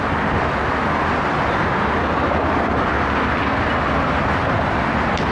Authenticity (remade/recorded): recorded